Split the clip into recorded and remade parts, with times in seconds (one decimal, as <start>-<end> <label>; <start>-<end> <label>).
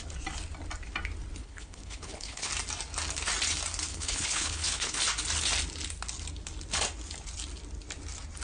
0.0-1.4 recorded; 1.4-2.5 remade; 2.5-3.9 recorded; 3.9-5.0 remade; 5.0-8.4 recorded